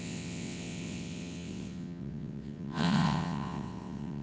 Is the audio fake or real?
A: fake